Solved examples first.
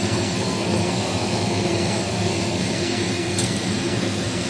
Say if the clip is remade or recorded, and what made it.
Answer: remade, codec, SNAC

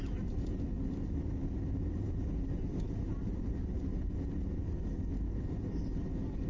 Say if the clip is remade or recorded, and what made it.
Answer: recorded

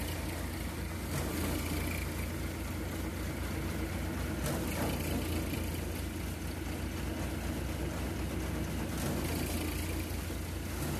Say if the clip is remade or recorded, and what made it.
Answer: recorded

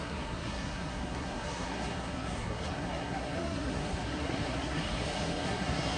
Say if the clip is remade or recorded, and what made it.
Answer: remade, codec, SNAC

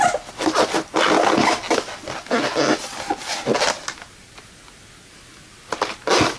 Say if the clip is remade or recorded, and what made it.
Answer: recorded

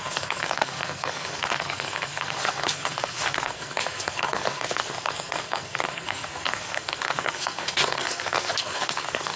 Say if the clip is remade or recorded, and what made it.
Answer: remade, codec, SNAC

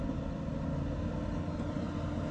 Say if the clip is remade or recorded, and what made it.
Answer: recorded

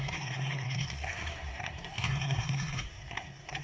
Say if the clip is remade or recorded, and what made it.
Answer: remade, codec, SNAC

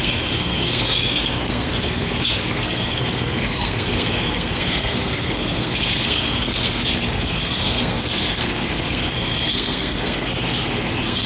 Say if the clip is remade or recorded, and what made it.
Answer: remade, codec, SNAC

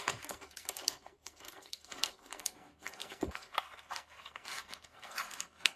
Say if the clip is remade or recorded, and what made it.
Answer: remade, codec, SNAC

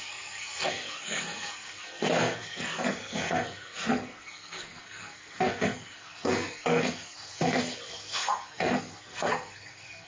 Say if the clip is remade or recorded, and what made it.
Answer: remade, codec, SNAC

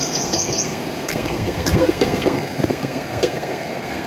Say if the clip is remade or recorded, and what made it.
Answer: remade, codec, SNAC